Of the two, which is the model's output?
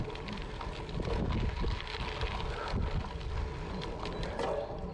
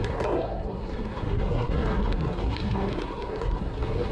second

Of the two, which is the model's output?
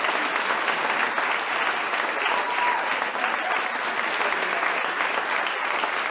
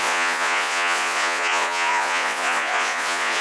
second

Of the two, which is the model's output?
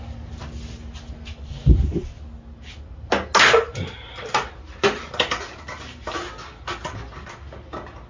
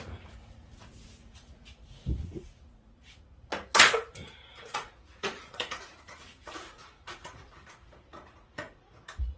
second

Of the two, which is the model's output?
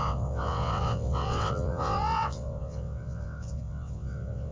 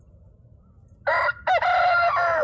first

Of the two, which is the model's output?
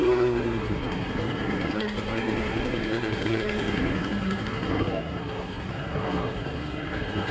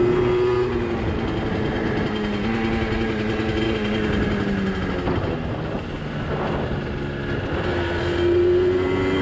first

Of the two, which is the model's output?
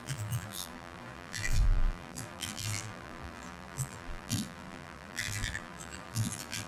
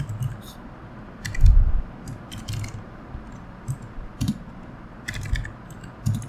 first